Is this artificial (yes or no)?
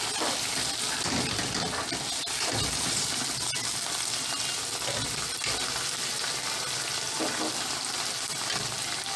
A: no